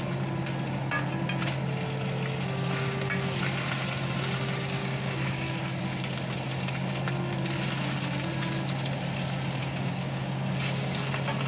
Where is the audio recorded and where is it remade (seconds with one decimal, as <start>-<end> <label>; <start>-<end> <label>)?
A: 0.0-4.8 recorded; 4.8-5.8 remade; 5.8-9.6 recorded; 9.6-10.5 remade; 10.5-11.5 recorded